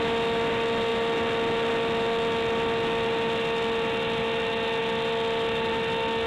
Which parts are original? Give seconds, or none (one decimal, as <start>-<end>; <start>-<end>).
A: 0.0-6.3